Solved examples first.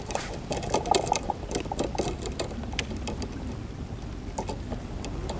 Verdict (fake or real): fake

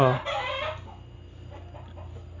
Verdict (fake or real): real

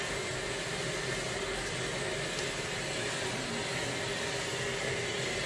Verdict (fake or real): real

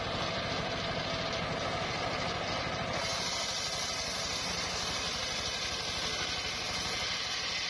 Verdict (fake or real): real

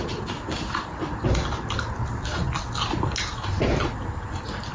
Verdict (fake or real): real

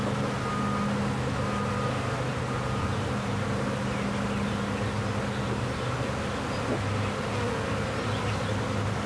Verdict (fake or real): real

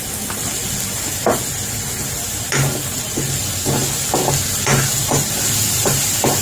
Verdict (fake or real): real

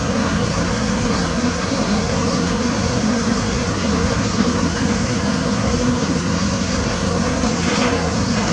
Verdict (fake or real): fake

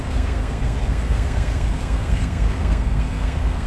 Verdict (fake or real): fake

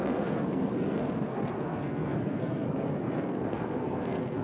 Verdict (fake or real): fake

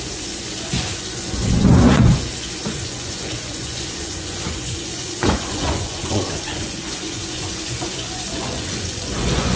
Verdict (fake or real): fake